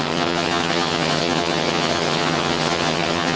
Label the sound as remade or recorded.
remade